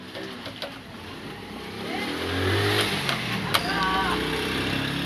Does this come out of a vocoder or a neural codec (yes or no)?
no